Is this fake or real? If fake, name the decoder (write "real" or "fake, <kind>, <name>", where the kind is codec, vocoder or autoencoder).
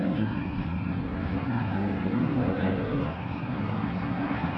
fake, codec, SNAC